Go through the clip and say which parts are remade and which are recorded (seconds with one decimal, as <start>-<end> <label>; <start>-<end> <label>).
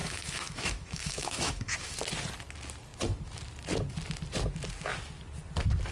0.0-2.0 remade; 2.0-5.9 recorded